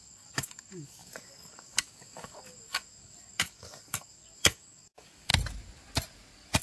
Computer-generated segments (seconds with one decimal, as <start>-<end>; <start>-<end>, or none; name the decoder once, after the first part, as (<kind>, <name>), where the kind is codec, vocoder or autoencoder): 0.0-5.3 (codec, DAC)